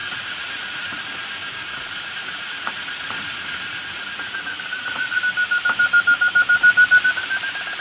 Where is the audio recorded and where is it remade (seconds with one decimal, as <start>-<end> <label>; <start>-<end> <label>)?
0.0-1.0 remade; 1.0-1.6 recorded; 1.6-5.2 remade; 5.2-7.8 recorded